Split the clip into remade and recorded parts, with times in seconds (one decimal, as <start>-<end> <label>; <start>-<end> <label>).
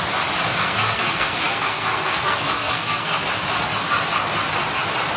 0.0-0.5 recorded; 0.5-3.2 remade; 3.2-5.2 recorded